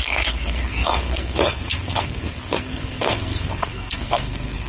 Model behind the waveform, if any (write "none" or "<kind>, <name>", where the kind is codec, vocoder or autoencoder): codec, SNAC